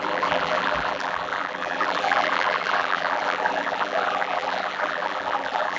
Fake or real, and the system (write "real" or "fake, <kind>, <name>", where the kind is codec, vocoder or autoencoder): fake, vocoder, BigVGAN v2